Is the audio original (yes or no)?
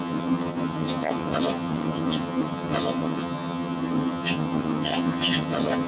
no